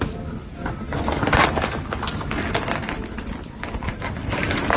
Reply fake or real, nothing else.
real